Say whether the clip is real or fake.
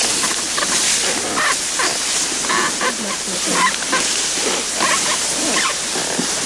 real